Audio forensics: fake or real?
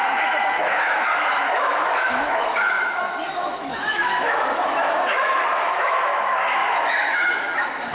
fake